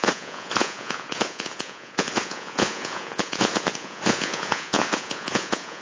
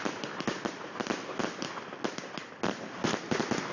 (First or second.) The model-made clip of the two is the first